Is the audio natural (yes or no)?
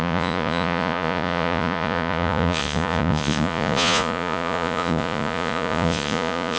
no